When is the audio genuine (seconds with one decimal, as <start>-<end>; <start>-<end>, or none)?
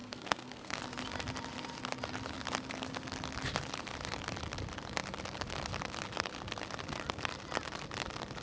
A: 0.8-8.4